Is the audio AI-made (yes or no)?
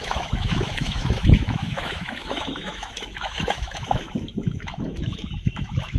yes